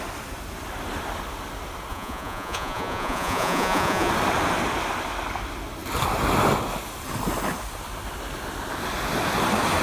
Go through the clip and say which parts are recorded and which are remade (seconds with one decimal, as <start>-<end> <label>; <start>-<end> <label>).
0.0-1.9 recorded; 1.9-4.1 remade; 4.1-9.8 recorded